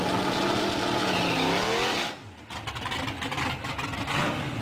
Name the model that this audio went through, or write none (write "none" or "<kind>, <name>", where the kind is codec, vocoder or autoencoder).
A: none